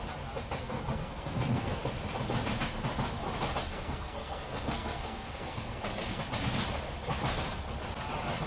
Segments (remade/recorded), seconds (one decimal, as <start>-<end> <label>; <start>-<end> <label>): 0.0-0.6 recorded; 0.6-1.8 remade; 1.8-3.7 recorded; 3.7-6.2 remade; 6.2-8.5 recorded